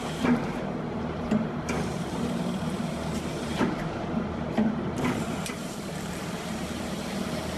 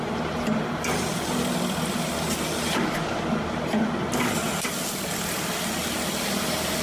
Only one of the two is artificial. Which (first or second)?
first